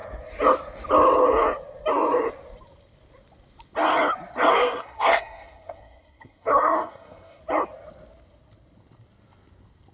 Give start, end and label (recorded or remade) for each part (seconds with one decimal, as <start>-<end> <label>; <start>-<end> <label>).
0.0-4.5 recorded; 4.5-7.4 remade; 7.4-9.9 recorded

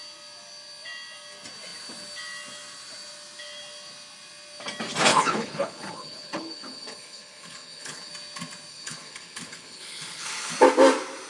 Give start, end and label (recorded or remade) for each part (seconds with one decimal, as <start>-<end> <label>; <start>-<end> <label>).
0.0-5.1 recorded; 5.1-8.1 remade; 8.1-8.7 recorded; 8.7-10.5 remade; 10.5-11.3 recorded

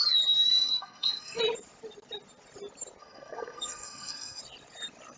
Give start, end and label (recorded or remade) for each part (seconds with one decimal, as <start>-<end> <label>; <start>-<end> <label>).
0.0-0.5 recorded; 0.5-1.4 remade; 1.4-3.0 recorded; 3.0-4.4 remade; 4.4-5.2 recorded

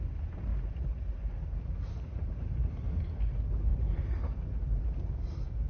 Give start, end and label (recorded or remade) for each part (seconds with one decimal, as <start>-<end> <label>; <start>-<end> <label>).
0.0-0.5 recorded; 0.5-2.6 remade; 2.6-3.7 recorded; 3.7-4.2 remade; 4.2-5.7 recorded

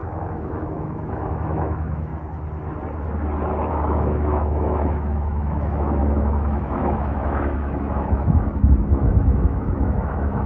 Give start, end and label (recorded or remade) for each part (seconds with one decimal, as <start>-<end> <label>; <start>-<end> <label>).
0.0-2.1 remade; 2.1-3.7 recorded; 3.7-10.5 remade

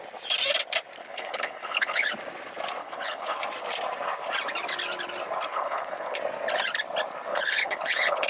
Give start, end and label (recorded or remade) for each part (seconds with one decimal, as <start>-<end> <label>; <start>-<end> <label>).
0.0-1.0 recorded; 1.0-2.1 remade; 2.1-2.8 recorded; 2.8-3.4 remade; 3.4-5.5 recorded; 5.5-6.2 remade; 6.2-7.3 recorded; 7.3-8.3 remade

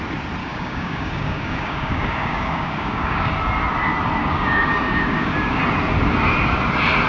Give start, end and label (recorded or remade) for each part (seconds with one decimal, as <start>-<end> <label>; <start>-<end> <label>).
0.0-0.4 recorded; 0.4-3.3 remade; 3.3-4.2 recorded; 4.2-5.6 remade; 5.6-7.1 recorded